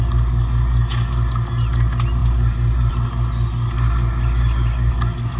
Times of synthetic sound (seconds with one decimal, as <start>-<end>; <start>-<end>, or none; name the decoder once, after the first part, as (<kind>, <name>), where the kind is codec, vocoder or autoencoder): none